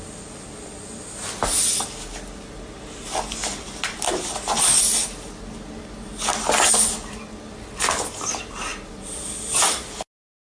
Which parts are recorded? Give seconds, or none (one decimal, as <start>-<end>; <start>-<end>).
0.0-10.6